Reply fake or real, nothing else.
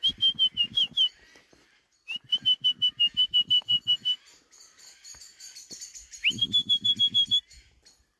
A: real